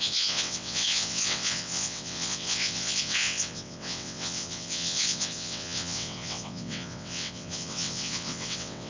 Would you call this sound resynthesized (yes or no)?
yes